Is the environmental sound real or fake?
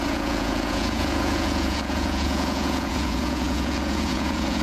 fake